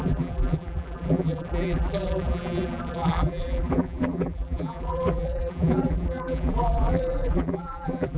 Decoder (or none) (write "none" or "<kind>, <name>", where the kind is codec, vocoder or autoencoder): vocoder, BigVGAN v2